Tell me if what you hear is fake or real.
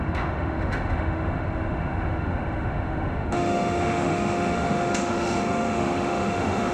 fake